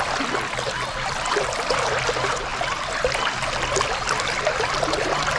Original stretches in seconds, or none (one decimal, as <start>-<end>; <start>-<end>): 0.0-5.4

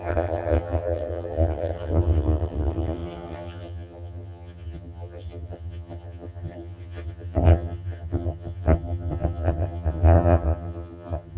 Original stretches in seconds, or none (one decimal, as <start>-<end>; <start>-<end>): none

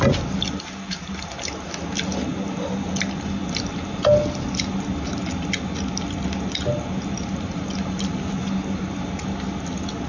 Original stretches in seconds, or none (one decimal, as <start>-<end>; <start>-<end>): 0.0-10.1

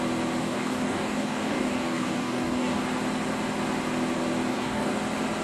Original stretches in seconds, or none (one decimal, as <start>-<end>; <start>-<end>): 0.0-0.4; 2.8-4.5; 5.0-5.4

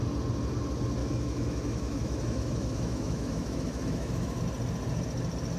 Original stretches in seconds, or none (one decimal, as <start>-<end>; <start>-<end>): 0.0-1.0; 4.4-5.6